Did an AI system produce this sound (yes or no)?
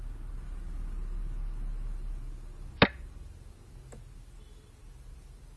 no